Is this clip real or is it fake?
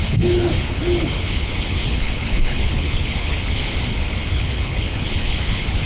fake